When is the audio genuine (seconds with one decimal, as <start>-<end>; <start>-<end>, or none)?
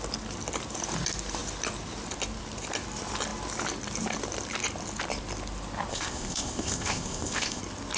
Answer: 0.0-5.9; 7.6-8.0